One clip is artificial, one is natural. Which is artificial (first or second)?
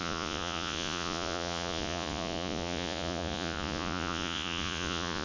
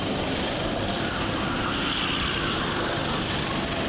first